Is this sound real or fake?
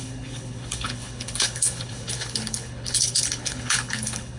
fake